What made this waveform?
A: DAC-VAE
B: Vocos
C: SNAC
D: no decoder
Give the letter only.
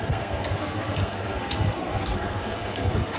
C